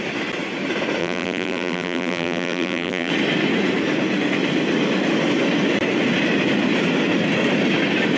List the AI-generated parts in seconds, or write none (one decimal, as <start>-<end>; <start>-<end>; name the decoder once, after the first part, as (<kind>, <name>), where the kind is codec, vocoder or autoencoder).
1.0-3.1 (vocoder, BigVGAN v2)